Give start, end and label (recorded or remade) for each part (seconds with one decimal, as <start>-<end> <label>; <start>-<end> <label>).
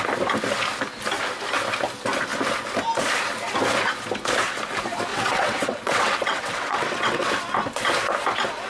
0.0-5.1 recorded; 5.1-7.3 remade; 7.3-8.7 recorded